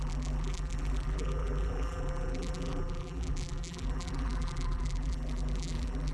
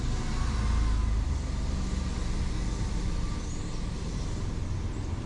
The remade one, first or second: first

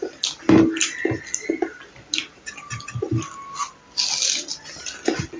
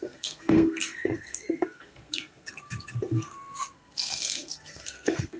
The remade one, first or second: second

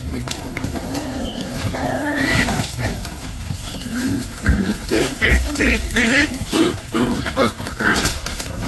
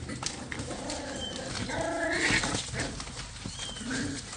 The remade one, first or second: first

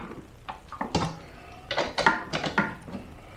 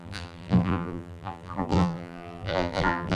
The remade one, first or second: second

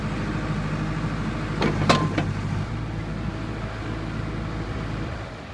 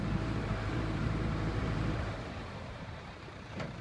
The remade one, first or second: second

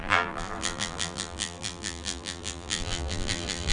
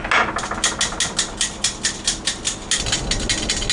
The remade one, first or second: first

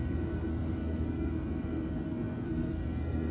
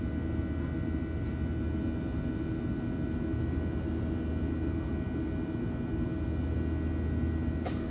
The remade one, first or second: first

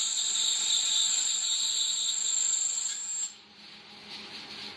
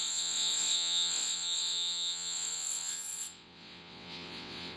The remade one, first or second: second